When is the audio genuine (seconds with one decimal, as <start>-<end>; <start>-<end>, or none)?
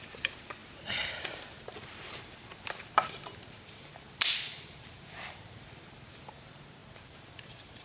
0.6-1.1